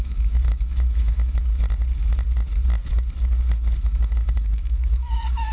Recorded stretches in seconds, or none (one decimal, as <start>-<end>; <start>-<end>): 1.4-3.8